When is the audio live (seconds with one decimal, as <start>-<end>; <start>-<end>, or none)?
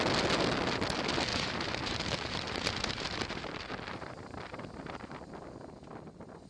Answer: 0.0-1.3; 5.2-6.5